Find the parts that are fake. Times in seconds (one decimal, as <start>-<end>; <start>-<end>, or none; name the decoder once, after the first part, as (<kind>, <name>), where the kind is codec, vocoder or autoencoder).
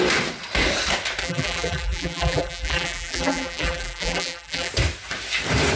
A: 1.2-4.7 (vocoder, BigVGAN v2)